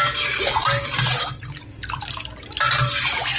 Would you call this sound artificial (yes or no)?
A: no